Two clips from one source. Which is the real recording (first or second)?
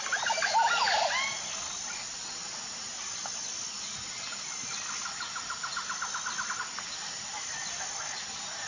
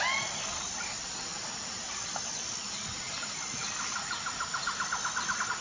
first